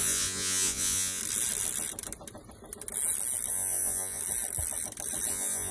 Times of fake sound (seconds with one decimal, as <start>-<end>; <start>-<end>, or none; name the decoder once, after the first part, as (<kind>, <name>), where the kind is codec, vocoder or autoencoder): 0.0-1.2 (vocoder, Vocos); 3.5-4.2; 5.3-5.7